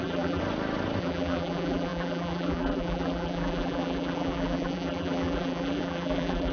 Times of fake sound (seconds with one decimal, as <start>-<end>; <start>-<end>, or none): 0.0-0.4; 1.0-6.5